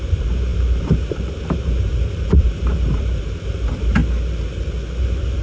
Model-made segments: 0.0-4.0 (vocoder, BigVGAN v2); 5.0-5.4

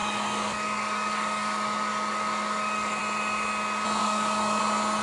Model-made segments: 0.0-3.0 (codec, DAC); 4.0-4.6

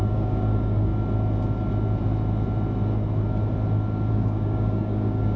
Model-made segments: 0.0-0.9 (codec, DAC); 4.1-5.4

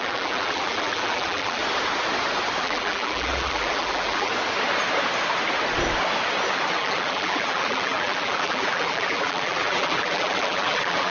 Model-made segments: 0.0-1.6 (vocoder, BigVGAN v2); 2.6-4.3; 6.8-11.1

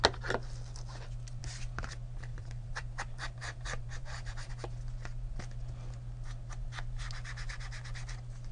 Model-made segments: 2.3-4.5 (vocoder, BigVGAN v2)